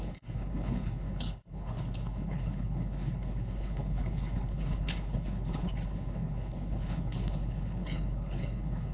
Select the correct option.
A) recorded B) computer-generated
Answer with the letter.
B